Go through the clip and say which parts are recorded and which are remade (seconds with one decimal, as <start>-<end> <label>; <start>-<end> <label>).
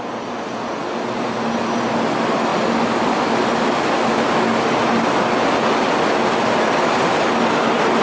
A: 0.0-8.0 recorded